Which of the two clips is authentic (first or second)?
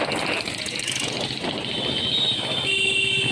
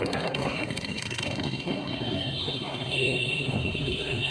first